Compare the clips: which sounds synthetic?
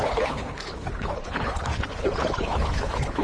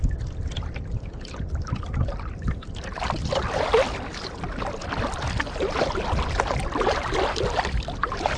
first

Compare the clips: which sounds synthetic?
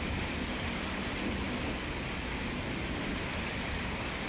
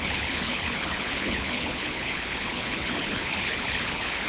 second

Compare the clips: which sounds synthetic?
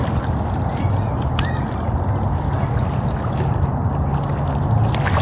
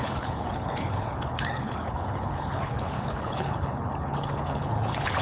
second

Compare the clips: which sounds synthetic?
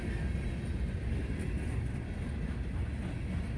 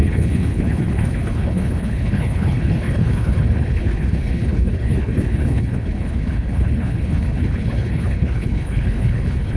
second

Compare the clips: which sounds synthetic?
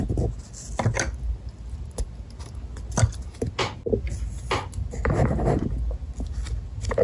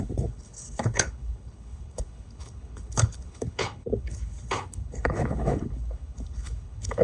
second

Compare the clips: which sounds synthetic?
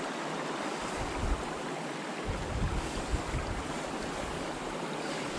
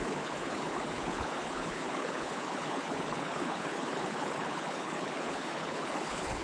second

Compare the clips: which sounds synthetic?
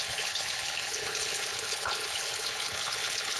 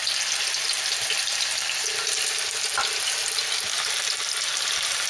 first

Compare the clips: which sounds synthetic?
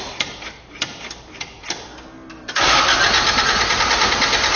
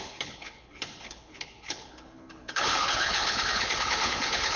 second